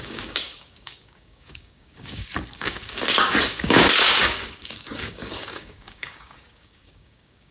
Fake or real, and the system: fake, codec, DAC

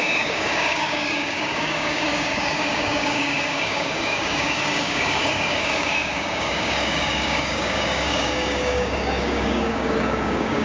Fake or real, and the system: fake, codec, DAC